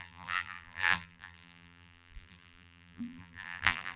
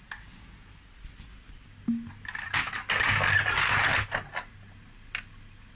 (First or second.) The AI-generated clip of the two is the first